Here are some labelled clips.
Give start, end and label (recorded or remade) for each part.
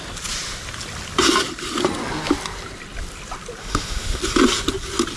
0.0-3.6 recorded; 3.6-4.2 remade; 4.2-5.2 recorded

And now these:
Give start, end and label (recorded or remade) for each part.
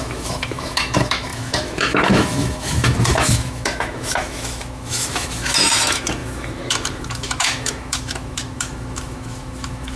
0.0-10.0 remade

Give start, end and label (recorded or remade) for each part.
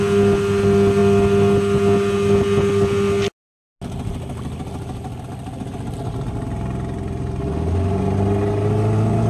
0.0-9.3 recorded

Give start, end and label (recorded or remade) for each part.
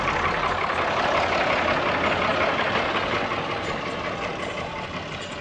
0.0-5.4 recorded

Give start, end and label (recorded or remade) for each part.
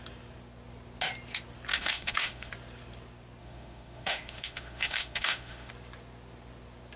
0.0-1.7 recorded; 1.7-2.5 remade; 2.5-3.4 recorded; 3.4-5.7 remade; 5.7-7.0 recorded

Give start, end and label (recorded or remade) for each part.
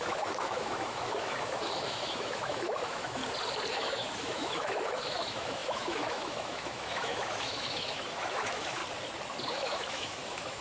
0.0-3.2 remade; 3.2-3.7 recorded; 3.7-8.8 remade; 8.8-9.5 recorded; 9.5-10.6 remade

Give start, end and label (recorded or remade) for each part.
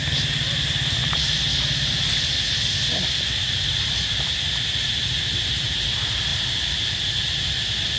0.0-8.0 recorded